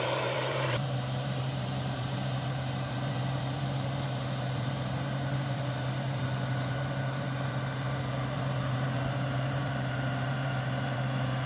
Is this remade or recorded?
remade